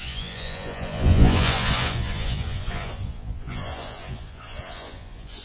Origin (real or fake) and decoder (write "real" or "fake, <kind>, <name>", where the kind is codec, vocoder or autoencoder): fake, vocoder, Vocos